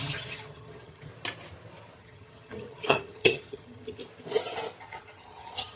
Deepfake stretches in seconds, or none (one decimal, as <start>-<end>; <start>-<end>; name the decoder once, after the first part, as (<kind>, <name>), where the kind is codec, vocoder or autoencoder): 0.0-1.1 (vocoder, HiFi-GAN); 2.0-4.0; 4.8-5.8